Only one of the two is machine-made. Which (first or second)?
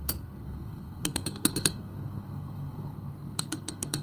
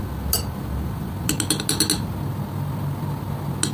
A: first